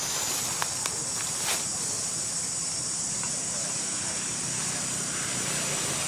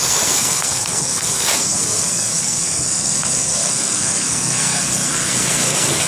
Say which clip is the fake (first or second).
second